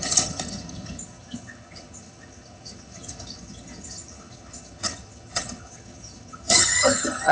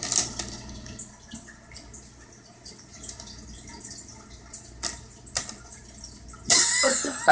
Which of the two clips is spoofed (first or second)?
first